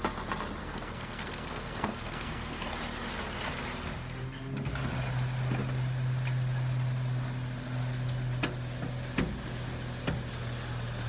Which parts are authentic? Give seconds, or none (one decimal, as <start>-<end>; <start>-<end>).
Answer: 0.0-0.6; 2.7-11.1